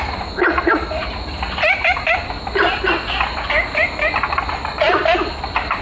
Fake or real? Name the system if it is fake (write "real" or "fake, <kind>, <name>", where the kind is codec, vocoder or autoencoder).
real